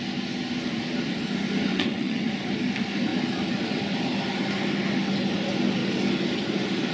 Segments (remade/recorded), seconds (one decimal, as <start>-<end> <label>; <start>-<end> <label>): 0.0-1.7 recorded; 1.7-2.3 remade; 2.3-6.9 recorded